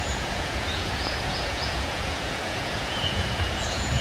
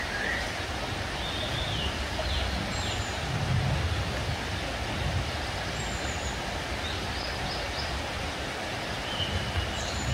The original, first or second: second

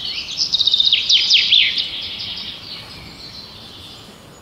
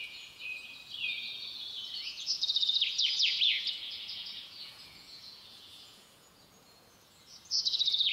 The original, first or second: first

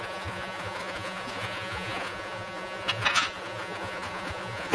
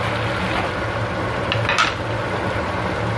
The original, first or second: second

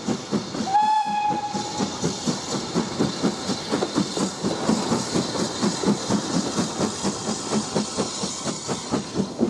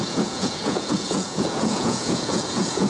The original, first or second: first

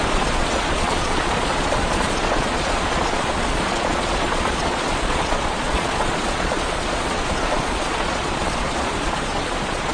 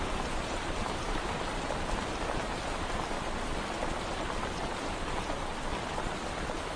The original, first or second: second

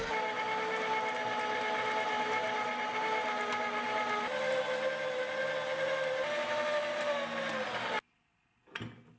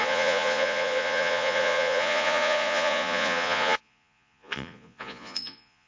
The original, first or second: first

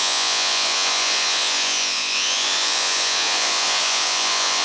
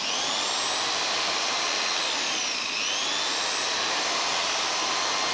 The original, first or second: second